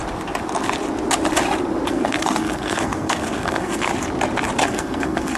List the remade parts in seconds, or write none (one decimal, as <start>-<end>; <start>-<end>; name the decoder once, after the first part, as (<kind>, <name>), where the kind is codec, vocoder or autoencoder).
1.9-3.9 (codec, SNAC); 4.6-5.4